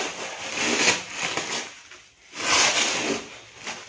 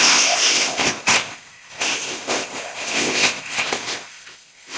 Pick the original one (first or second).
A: first